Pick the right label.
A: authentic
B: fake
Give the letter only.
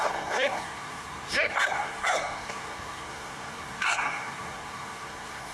B